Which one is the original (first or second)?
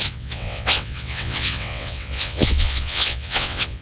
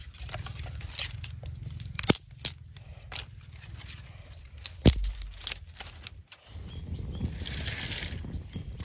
second